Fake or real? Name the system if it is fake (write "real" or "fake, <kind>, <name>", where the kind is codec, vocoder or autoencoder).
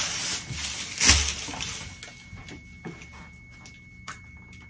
real